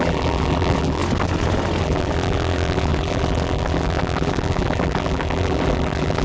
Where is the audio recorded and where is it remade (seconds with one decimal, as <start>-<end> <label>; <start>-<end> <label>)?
0.0-1.0 remade; 1.0-1.8 recorded; 1.8-6.2 remade